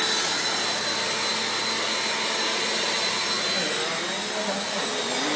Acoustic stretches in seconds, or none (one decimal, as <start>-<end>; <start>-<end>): 0.0-5.4